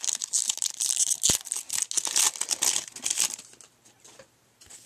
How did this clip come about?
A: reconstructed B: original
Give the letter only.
B